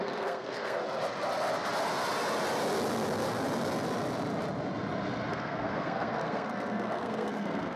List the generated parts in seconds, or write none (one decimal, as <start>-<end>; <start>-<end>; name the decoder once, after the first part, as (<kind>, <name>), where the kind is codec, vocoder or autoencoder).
0.0-0.8 (codec, SNAC); 5.3-7.8